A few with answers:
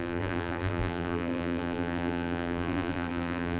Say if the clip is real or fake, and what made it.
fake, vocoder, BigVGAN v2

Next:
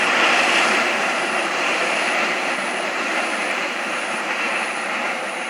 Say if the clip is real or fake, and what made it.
fake, vocoder, BigVGAN v2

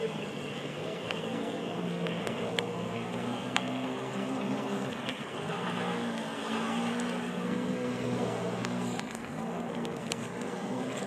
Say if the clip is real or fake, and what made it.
fake, codec, SNAC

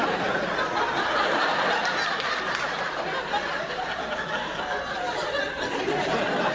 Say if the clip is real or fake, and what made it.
real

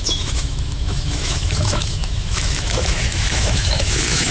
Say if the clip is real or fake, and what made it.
fake, autoencoder, DAC-VAE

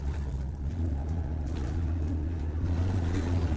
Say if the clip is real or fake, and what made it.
fake, vocoder, Vocos